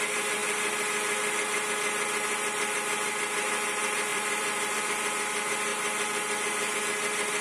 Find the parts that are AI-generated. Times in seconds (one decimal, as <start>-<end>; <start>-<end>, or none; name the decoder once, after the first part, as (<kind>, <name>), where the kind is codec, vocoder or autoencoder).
4.1-4.8 (vocoder, BigVGAN v2)